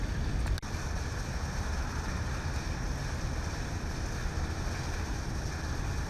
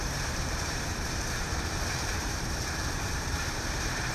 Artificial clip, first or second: second